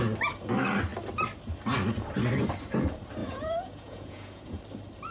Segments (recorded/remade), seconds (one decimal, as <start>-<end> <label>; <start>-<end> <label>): 0.0-3.2 recorded; 3.2-4.6 remade; 4.6-5.1 recorded